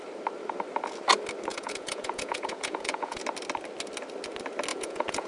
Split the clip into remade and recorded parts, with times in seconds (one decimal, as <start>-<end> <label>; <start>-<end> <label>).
0.0-1.5 recorded; 1.5-3.2 remade; 3.2-4.7 recorded; 4.7-5.3 remade